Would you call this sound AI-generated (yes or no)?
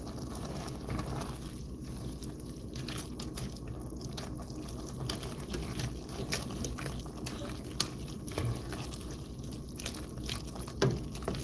no